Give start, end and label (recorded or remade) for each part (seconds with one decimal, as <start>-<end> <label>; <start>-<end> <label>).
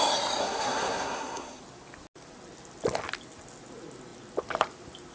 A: 0.0-0.4 recorded; 0.4-1.6 remade; 1.6-5.1 recorded